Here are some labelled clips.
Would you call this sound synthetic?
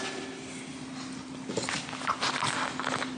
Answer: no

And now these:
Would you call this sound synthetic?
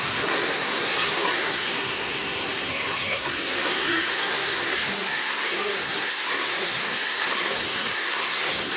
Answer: yes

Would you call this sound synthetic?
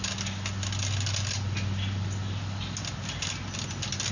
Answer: no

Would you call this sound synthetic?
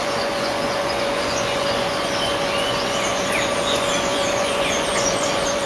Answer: yes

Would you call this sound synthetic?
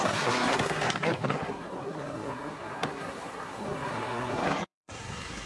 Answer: yes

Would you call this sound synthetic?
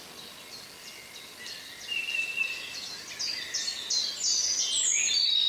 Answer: no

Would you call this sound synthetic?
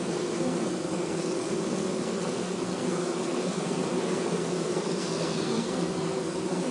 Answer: yes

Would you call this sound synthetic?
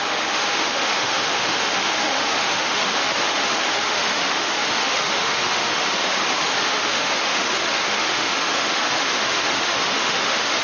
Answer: yes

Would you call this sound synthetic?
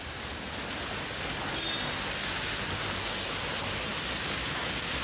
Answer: no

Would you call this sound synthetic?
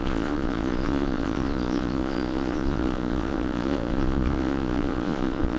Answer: yes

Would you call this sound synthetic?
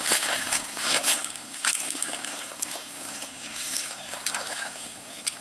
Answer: yes